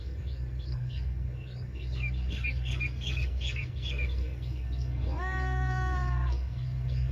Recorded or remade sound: remade